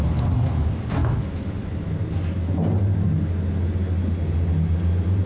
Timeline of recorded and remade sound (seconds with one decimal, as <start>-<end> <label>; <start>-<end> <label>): 0.0-1.0 recorded; 1.0-1.9 remade; 1.9-5.3 recorded